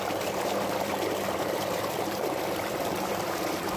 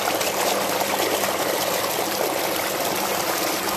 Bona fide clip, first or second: second